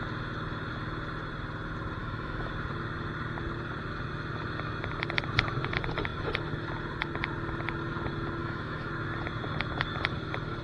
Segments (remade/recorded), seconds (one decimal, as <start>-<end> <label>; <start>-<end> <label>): 0.0-2.0 recorded; 2.0-2.5 remade; 2.5-8.4 recorded; 8.4-8.9 remade; 8.9-10.6 recorded